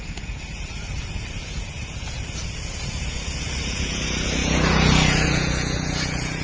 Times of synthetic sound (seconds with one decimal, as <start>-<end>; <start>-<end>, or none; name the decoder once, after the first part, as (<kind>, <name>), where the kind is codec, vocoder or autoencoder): 0.0-6.4 (vocoder, Vocos)